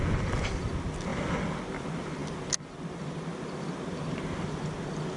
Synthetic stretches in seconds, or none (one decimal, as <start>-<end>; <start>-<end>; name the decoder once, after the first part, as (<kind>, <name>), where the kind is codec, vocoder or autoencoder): none